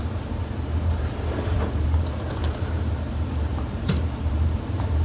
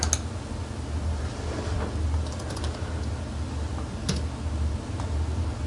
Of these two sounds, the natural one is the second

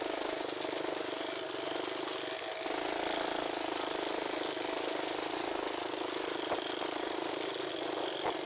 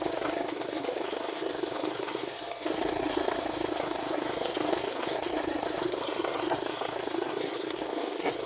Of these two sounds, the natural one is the first